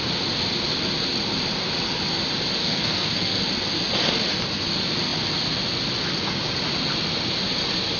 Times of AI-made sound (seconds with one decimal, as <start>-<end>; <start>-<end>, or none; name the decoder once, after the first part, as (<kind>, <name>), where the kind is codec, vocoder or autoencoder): 2.6-3.4 (codec, SNAC)